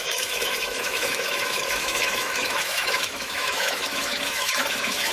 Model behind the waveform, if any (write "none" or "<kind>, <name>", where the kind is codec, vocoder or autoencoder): autoencoder, DAC-VAE